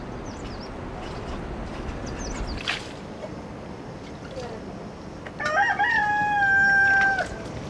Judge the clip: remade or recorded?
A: recorded